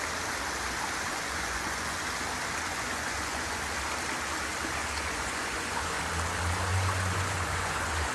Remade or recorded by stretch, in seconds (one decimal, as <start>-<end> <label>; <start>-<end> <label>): 0.0-1.1 recorded; 1.1-2.0 remade; 2.0-2.7 recorded; 2.7-3.6 remade; 3.6-4.8 recorded; 4.8-6.0 remade; 6.0-6.7 recorded; 6.7-8.1 remade